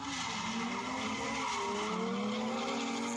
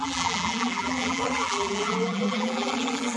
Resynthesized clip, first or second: second